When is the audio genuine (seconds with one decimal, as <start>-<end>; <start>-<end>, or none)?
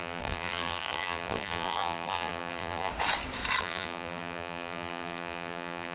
2.9-3.6